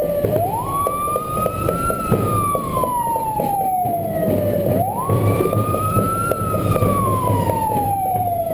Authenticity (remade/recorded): remade